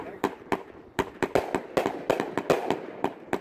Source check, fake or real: real